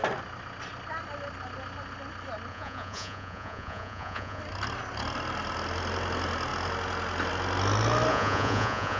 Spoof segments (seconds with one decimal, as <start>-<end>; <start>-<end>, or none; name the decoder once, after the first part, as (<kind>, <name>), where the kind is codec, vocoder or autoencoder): 2.5-4.4 (vocoder, Vocos); 8.1-9.0